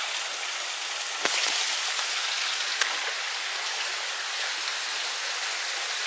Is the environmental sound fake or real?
real